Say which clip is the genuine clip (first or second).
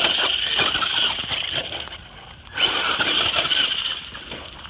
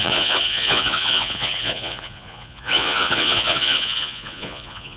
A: first